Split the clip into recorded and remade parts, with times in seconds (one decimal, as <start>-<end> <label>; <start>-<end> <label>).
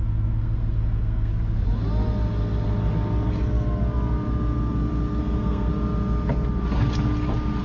0.0-1.3 remade; 1.3-5.2 recorded; 5.2-5.7 remade; 5.7-7.6 recorded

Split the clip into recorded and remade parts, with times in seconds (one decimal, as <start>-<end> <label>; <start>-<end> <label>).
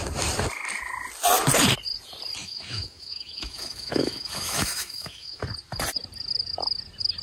0.0-2.4 recorded; 2.4-5.4 remade; 5.4-7.2 recorded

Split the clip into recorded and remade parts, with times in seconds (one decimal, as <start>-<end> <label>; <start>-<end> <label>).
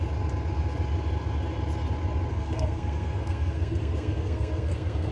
0.0-2.3 recorded; 2.3-5.1 remade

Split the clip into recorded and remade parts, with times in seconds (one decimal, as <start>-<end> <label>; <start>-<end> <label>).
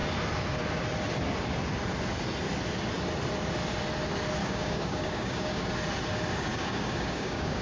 0.0-4.4 recorded; 4.4-5.7 remade; 5.7-6.5 recorded; 6.5-7.6 remade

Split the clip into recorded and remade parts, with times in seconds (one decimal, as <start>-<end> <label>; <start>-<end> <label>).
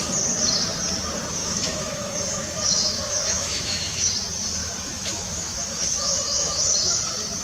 0.0-1.4 recorded; 1.4-4.1 remade; 4.1-4.6 recorded; 4.6-7.0 remade; 7.0-7.4 recorded